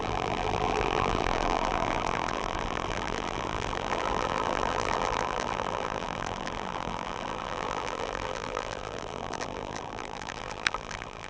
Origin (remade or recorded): remade